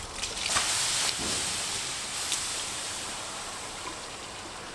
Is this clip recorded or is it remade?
recorded